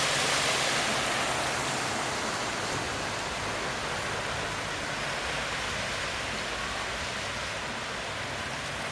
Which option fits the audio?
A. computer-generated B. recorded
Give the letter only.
B